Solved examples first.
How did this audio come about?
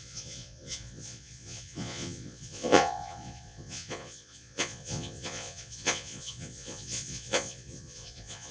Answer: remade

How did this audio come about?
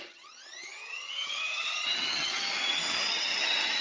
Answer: remade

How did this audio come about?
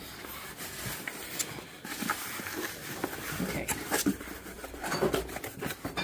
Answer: recorded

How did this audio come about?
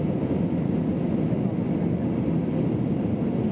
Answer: recorded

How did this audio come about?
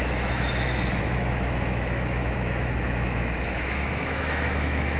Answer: remade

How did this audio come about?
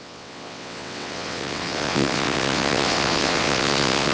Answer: remade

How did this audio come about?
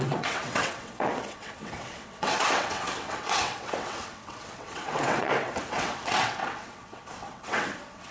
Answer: remade